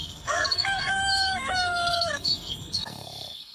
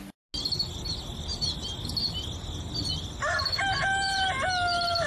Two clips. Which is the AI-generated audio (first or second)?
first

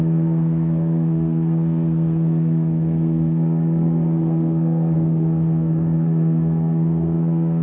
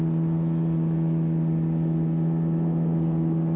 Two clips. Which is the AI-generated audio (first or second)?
first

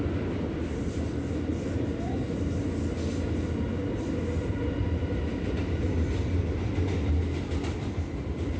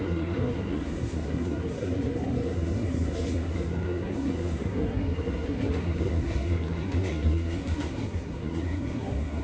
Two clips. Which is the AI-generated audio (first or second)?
second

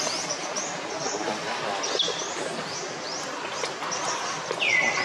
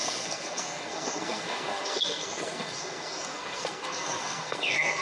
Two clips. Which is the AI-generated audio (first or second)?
second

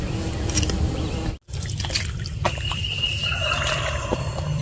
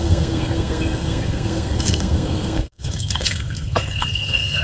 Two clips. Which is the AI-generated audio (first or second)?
second